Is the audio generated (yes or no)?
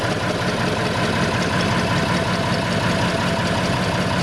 no